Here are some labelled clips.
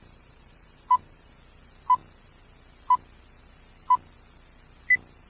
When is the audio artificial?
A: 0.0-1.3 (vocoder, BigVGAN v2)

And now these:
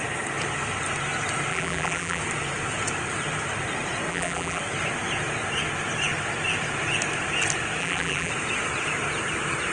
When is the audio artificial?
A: 1.5-2.2 (vocoder, BigVGAN v2); 4.1-4.6; 7.8-8.3

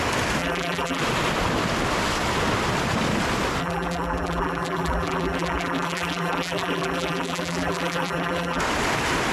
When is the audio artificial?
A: 0.4-1.0 (vocoder, BigVGAN v2); 3.6-8.6

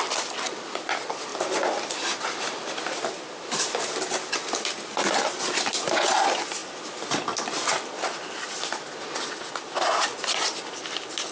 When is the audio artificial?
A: 1.3-3.9 (vocoder, BigVGAN v2)